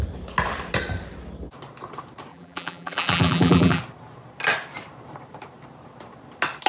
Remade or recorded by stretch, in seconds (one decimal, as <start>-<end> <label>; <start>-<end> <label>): 0.0-2.3 recorded; 2.3-3.8 remade; 3.8-6.7 recorded